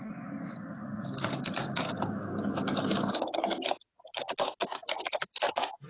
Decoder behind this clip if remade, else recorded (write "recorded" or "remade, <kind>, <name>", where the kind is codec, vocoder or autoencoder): recorded